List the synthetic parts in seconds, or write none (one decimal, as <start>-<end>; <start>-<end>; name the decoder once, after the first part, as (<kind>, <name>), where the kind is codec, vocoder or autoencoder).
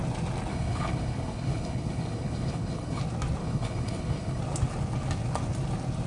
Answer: 0.5-3.0 (codec, HILCodec); 3.4-4.4